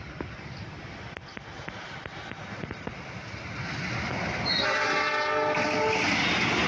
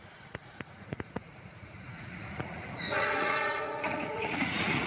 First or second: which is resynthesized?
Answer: second